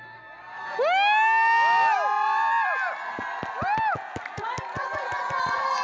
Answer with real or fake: real